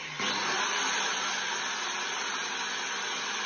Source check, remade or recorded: recorded